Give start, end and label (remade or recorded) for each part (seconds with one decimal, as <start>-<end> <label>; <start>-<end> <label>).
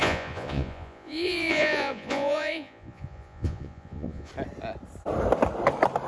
0.0-4.3 remade; 4.3-6.1 recorded